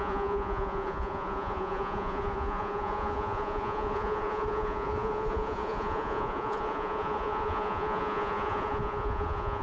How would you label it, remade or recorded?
remade